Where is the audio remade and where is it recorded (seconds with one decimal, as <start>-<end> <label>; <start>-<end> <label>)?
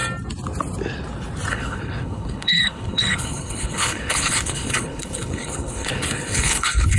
0.0-1.5 recorded; 1.5-7.0 remade